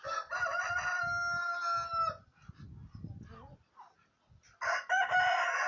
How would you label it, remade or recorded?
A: recorded